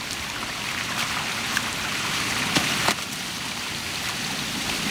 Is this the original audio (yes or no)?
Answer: no